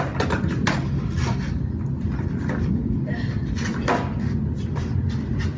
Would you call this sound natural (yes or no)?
yes